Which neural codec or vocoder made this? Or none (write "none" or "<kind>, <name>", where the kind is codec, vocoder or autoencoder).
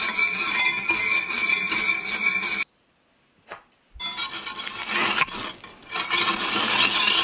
none